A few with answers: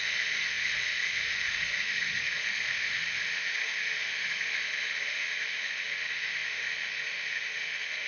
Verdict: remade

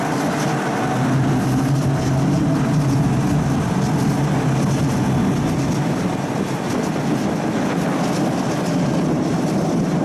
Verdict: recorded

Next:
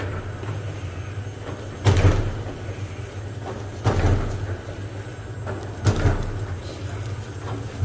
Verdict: recorded